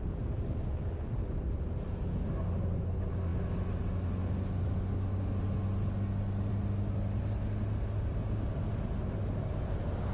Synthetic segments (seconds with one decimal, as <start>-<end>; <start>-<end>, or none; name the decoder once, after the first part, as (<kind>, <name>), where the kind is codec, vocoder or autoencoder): none